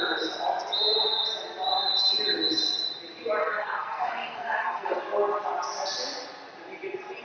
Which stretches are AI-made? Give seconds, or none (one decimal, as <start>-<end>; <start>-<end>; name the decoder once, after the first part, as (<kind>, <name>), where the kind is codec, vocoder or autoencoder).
3.4-5.0 (codec, SNAC)